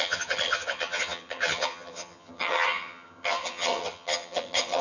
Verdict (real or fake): fake